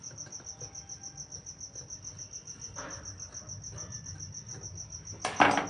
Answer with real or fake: real